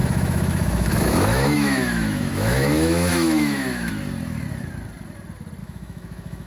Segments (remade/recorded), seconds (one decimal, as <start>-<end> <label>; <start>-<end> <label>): 0.0-3.9 remade; 3.9-5.6 recorded; 5.6-6.5 remade